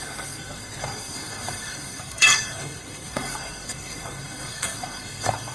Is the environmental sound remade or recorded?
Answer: remade